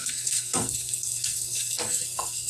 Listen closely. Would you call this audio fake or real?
fake